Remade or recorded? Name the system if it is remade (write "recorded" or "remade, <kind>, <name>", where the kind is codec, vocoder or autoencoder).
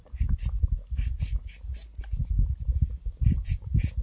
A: recorded